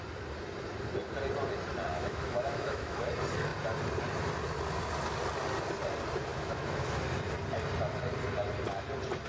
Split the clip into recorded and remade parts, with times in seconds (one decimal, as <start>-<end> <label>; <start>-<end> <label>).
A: 0.0-1.9 recorded; 1.9-3.1 remade; 3.1-6.3 recorded; 6.3-7.0 remade; 7.0-9.3 recorded